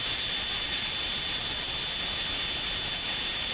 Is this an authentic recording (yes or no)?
yes